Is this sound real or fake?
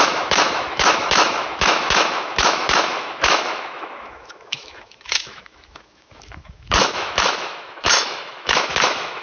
fake